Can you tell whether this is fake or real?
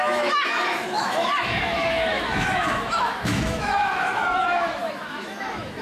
fake